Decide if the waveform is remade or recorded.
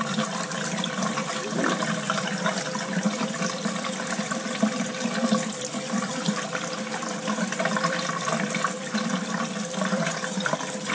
remade